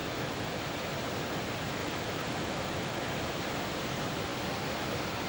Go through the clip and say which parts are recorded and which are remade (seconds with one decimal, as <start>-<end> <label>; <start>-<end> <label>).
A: 0.0-0.6 remade; 0.6-1.8 recorded; 1.8-3.1 remade; 3.1-5.3 recorded